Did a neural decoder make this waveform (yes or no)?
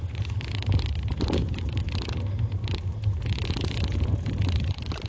no